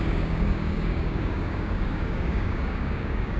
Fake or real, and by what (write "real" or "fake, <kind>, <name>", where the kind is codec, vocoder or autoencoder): fake, codec, DAC